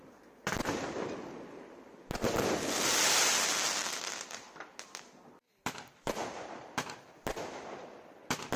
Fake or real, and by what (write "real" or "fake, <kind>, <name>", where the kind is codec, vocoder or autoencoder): real